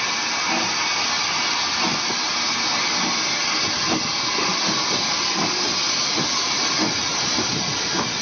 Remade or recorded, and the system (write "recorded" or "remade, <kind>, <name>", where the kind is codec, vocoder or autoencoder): recorded